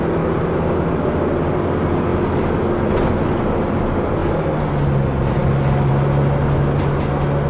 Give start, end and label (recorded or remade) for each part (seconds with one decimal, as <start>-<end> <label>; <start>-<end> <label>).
0.0-7.5 recorded